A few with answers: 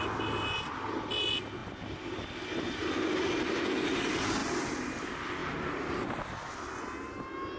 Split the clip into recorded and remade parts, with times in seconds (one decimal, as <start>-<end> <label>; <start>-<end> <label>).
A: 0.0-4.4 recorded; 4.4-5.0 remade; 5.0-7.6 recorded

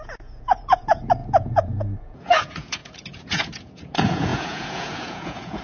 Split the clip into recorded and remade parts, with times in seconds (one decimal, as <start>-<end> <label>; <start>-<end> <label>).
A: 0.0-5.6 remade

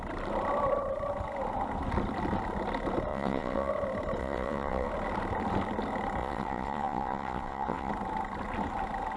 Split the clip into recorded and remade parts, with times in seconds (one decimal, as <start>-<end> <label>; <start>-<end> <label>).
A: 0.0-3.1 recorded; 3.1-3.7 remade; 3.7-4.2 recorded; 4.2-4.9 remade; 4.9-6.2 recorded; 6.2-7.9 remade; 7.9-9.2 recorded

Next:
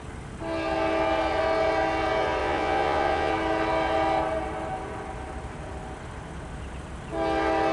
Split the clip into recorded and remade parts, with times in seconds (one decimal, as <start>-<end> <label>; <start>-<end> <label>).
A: 0.0-2.4 recorded; 2.4-3.3 remade; 3.3-7.7 recorded